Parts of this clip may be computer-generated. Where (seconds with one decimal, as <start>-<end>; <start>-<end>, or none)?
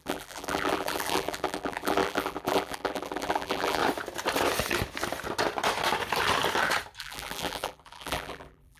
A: 0.0-3.8; 7.0-8.8